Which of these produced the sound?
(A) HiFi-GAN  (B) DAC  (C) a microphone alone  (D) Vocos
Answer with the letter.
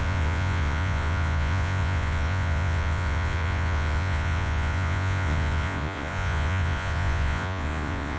D